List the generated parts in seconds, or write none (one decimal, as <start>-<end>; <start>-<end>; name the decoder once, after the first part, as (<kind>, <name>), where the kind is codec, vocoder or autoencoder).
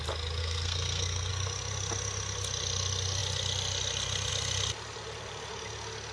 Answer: 0.4-1.3 (codec, SNAC)